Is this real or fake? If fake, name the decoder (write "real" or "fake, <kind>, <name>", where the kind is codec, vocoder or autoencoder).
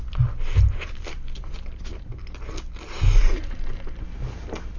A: real